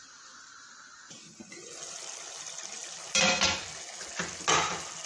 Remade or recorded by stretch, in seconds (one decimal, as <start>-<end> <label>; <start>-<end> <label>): 0.0-5.1 recorded